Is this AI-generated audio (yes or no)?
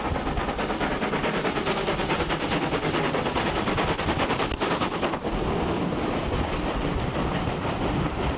no